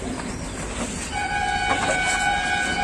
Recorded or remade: recorded